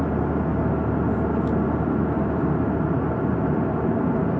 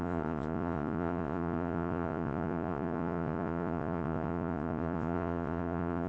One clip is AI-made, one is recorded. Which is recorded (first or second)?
first